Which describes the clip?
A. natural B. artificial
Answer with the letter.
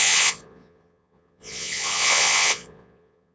B